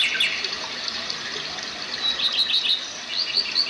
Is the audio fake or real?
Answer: real